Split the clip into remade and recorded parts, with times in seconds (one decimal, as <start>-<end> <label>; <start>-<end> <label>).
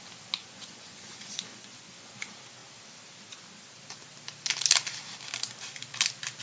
0.0-0.4 recorded; 0.4-2.1 remade; 2.1-6.4 recorded